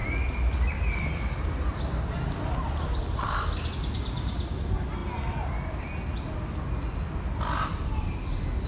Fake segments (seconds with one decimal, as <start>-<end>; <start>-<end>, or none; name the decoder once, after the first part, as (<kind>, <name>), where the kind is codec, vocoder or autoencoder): none